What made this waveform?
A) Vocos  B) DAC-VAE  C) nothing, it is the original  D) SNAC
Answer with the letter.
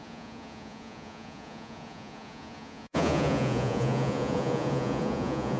A